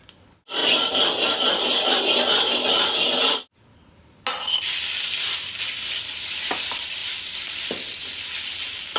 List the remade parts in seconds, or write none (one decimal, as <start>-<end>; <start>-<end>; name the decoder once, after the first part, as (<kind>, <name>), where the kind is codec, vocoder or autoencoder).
none